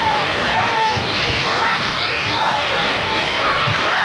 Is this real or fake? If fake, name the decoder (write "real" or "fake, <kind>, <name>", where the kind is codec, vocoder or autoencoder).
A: fake, codec, DAC